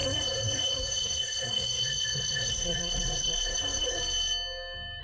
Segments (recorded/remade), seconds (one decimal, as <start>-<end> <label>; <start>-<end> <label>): 0.0-4.0 remade; 4.0-5.0 recorded